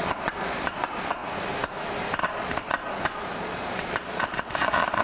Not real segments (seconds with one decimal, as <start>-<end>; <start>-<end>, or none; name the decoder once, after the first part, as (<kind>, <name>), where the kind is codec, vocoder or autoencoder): 0.0-1.2 (vocoder, Vocos); 2.2-2.8; 3.4-5.0